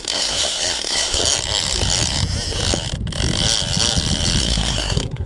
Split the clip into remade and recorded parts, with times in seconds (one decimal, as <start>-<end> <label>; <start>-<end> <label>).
0.0-1.2 remade; 1.2-4.4 recorded; 4.4-5.3 remade